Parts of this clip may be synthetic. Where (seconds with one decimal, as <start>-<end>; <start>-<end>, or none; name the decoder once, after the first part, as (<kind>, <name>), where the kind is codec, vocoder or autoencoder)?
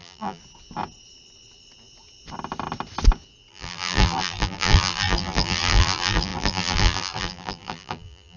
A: 0.0-0.4 (vocoder, BigVGAN v2); 3.5-8.4